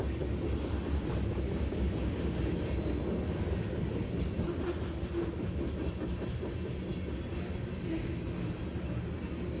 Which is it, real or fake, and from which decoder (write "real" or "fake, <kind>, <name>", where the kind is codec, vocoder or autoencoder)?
real